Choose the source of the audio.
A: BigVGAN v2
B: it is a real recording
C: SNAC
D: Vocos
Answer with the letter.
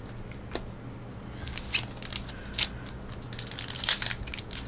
B